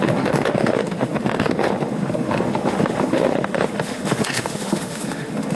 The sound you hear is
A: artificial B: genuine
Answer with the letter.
A